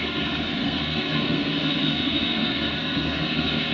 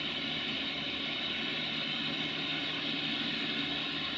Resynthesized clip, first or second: first